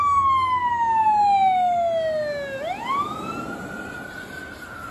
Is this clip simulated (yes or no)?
no